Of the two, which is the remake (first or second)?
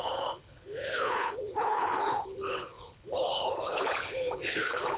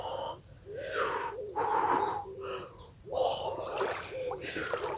first